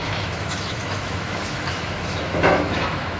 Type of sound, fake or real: fake